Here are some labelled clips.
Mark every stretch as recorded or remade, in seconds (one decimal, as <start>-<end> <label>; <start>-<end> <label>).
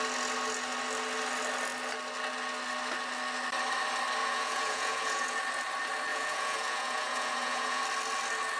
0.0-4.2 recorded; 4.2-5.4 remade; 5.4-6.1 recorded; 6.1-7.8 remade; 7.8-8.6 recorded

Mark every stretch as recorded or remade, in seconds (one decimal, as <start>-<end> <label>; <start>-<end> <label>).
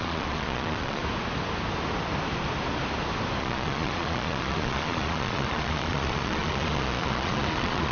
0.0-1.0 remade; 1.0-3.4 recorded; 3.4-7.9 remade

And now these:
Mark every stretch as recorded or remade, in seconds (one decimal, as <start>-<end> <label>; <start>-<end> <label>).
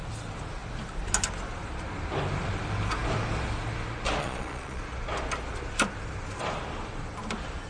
0.0-4.2 recorded; 4.2-4.8 remade; 4.8-7.7 recorded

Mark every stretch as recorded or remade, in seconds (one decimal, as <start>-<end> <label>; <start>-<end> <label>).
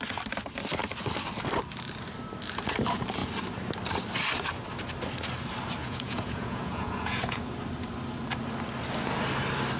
0.0-5.8 recorded; 5.8-7.4 remade; 7.4-9.8 recorded